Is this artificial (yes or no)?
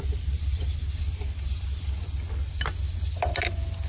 no